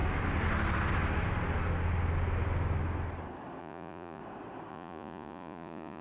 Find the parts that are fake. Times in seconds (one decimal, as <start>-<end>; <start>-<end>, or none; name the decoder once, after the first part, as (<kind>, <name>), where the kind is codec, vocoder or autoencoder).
3.6-4.2 (vocoder, Vocos); 4.7-6.0

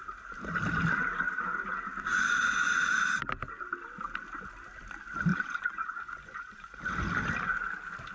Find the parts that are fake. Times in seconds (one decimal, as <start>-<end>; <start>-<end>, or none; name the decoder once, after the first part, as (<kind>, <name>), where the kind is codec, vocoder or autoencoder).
2.1-2.9 (vocoder, Vocos); 5.3-6.8

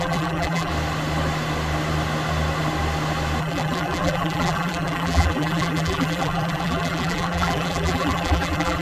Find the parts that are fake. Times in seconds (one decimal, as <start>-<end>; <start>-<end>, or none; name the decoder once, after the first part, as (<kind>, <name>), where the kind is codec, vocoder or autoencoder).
0.0-0.7 (vocoder, BigVGAN v2); 3.4-8.8